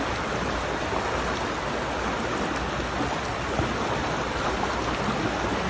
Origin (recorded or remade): recorded